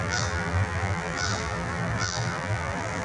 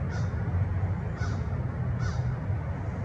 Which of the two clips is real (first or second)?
second